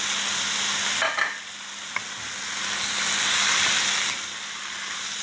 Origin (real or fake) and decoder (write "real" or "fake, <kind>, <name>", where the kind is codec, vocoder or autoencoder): real